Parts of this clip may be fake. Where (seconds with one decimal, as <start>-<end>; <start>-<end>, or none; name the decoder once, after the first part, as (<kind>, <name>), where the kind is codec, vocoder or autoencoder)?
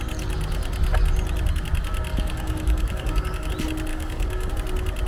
2.1-3.5 (codec, DAC); 3.9-4.5